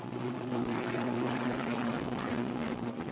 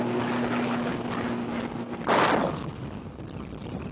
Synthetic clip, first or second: first